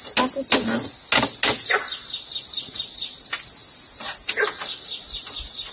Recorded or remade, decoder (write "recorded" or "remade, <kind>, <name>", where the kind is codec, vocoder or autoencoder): recorded